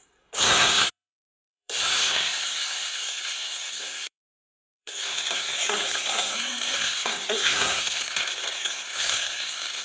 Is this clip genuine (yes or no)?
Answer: no